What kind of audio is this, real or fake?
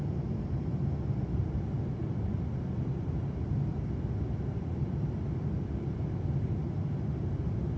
real